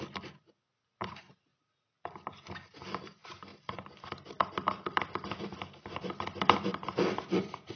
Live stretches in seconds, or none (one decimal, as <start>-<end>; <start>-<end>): 0.0-7.8